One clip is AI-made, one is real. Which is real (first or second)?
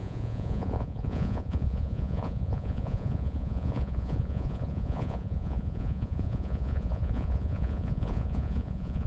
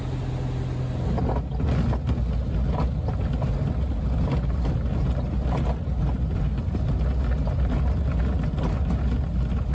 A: second